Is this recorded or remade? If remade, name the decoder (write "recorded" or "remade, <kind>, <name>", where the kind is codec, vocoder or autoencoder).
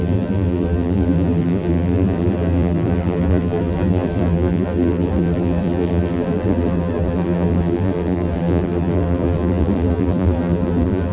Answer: remade, vocoder, BigVGAN v2